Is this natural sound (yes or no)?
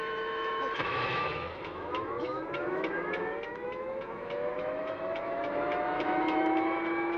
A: no